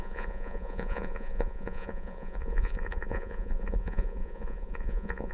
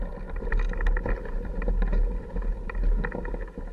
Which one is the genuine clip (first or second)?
second